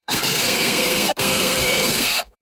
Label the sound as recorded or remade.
remade